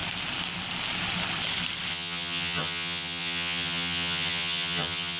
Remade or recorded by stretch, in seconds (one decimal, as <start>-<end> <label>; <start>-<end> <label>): 0.0-1.9 recorded; 1.9-5.2 remade

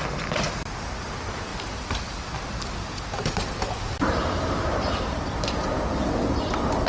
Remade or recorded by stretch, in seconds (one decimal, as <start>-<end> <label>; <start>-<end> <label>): 0.0-6.9 recorded

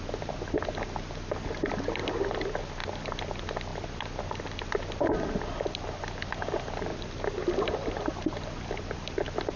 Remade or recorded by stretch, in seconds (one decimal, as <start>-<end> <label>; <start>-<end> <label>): 0.0-9.6 recorded

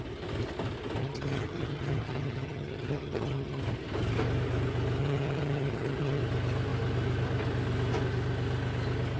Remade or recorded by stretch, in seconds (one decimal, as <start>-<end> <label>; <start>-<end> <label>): 0.0-1.0 recorded; 1.0-3.6 remade; 3.6-5.0 recorded; 5.0-6.2 remade; 6.2-9.2 recorded